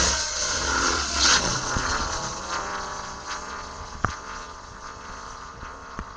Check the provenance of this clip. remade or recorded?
remade